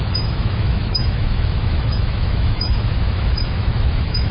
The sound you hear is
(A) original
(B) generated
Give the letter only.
B